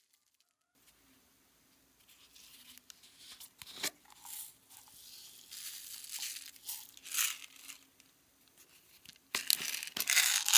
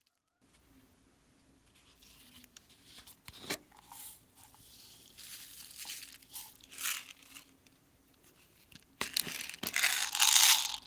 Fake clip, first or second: second